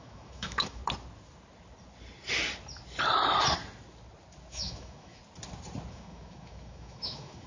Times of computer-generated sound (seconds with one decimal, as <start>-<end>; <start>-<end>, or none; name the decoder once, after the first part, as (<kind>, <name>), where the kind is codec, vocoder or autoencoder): 0.0-0.8 (autoencoder, DAC-VAE); 4.5-5.2; 5.9-7.5